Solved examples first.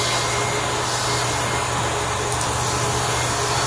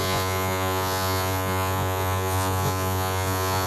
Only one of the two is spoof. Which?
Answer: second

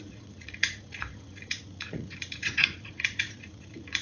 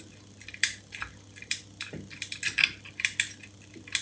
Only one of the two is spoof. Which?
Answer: first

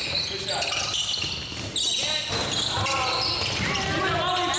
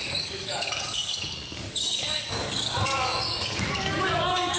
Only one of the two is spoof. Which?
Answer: second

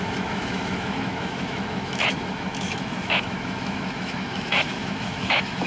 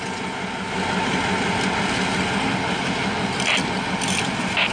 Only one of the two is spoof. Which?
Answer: first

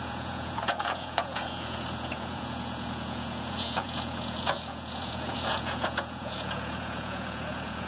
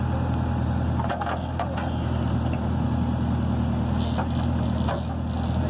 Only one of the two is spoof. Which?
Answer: first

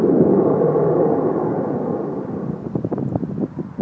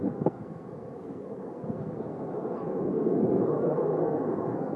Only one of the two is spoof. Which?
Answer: second